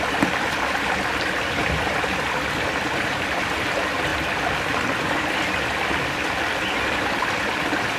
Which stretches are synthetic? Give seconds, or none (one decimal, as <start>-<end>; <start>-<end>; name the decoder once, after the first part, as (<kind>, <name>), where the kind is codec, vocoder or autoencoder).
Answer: 0.0-8.0 (vocoder, BigVGAN v2)